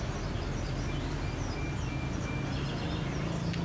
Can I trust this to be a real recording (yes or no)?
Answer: yes